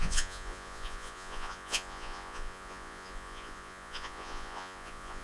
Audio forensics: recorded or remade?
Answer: remade